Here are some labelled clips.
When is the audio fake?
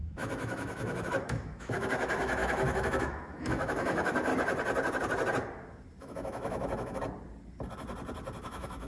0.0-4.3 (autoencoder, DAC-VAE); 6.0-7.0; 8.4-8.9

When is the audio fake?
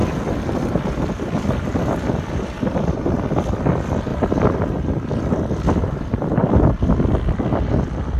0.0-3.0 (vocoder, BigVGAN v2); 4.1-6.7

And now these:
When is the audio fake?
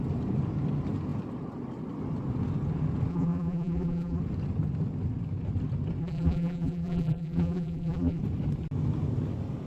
3.1-4.2 (vocoder, BigVGAN v2); 6.0-8.2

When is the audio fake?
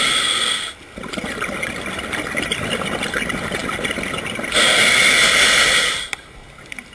none